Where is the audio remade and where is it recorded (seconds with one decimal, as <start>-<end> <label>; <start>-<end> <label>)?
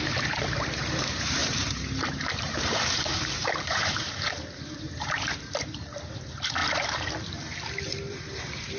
0.0-8.8 remade